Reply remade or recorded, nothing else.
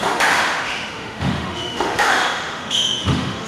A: remade